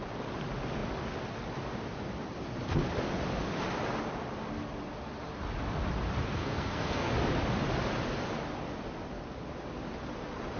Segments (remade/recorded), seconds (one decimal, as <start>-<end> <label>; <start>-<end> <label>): 0.0-6.4 recorded; 6.4-7.1 remade; 7.1-10.6 recorded